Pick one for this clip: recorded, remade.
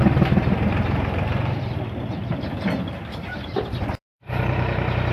remade